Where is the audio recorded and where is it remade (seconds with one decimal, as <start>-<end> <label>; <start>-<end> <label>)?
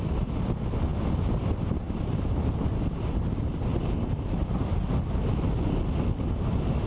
0.0-6.9 recorded